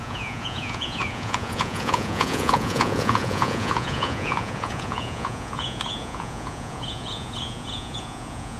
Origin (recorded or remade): remade